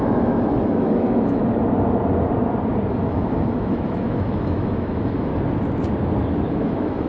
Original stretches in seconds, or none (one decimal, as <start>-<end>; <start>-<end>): 1.4-2.9; 5.3-6.5